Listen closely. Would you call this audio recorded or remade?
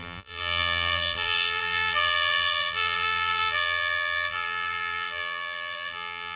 remade